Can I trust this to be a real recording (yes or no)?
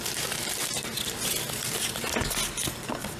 yes